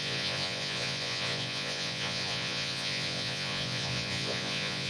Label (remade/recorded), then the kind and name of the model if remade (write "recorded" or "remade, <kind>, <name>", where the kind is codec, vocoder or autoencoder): remade, vocoder, Vocos